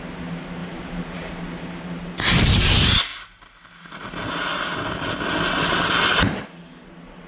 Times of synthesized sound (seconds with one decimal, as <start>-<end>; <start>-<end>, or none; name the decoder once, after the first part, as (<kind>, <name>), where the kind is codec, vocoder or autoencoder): 0.6-2.7 (vocoder, BigVGAN v2)